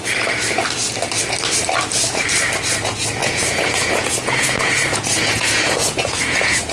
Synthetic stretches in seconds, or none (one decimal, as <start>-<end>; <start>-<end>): 3.2-6.7